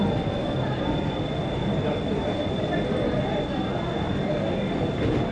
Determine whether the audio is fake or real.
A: real